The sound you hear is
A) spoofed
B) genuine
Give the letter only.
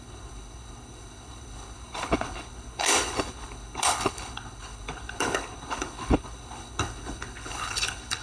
A